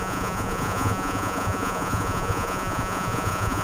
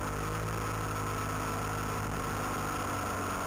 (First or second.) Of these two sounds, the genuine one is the second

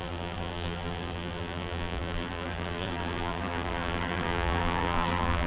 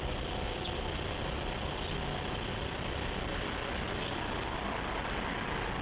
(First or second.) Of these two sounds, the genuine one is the second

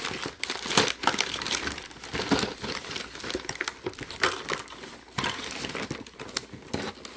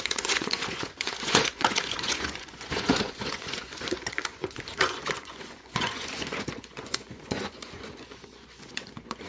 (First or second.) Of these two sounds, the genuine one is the first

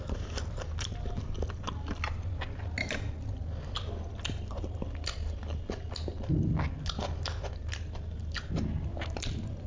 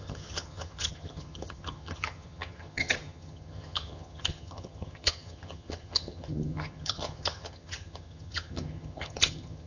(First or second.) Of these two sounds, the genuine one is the first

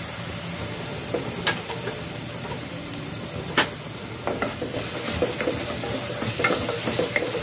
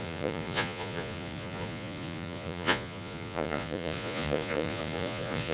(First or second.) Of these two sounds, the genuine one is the first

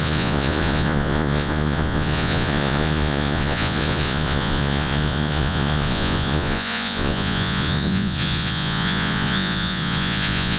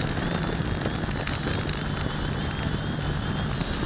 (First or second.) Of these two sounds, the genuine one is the second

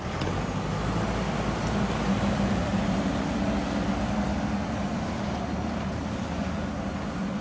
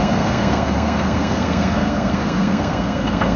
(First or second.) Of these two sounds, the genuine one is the first